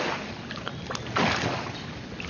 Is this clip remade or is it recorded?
recorded